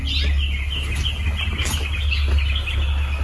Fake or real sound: real